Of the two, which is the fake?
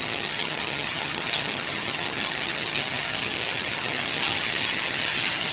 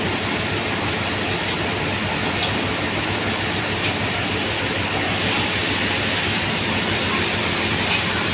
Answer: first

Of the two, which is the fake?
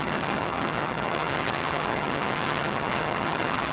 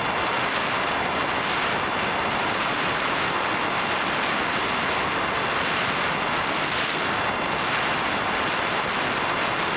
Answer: first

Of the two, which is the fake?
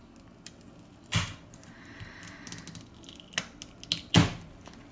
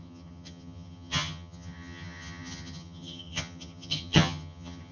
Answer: second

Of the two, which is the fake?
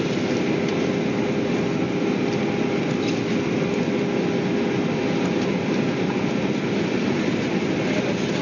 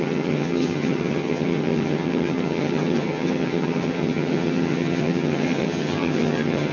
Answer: second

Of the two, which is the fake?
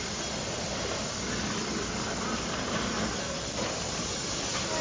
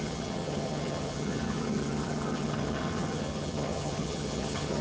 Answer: second